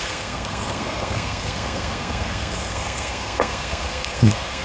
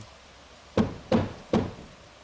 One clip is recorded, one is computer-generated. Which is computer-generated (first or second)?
first